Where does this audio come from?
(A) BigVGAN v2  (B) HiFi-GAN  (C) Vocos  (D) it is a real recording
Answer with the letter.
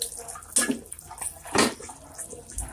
D